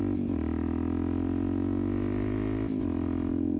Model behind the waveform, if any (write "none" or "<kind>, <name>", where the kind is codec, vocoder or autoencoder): none